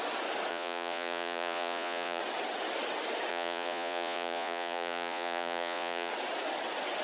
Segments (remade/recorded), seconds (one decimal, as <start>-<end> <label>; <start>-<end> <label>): 0.0-0.5 recorded; 0.5-2.2 remade; 2.2-3.3 recorded; 3.3-6.1 remade; 6.1-7.0 recorded